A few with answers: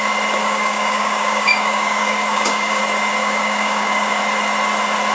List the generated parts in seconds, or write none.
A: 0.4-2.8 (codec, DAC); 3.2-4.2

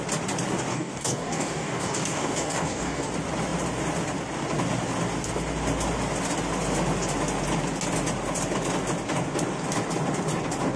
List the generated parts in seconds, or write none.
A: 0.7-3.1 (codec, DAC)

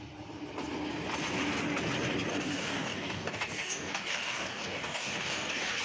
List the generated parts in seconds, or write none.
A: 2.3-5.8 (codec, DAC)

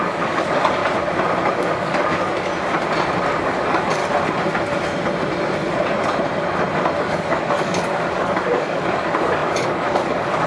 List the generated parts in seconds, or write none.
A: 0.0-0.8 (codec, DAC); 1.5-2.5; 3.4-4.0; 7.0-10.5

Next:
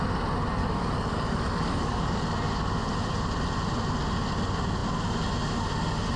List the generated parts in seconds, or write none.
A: 0.6-2.2 (codec, DAC)

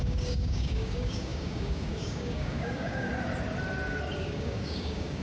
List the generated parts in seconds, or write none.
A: 0.0-3.1 (codec, DAC); 4.2-5.2

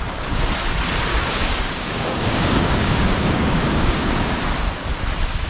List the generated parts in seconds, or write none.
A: 1.1-4.4 (codec, DAC)

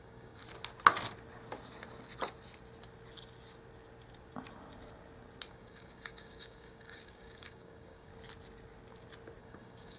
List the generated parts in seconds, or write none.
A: 0.0-0.4 (codec, DAC); 5.5-8.1; 9.4-10.0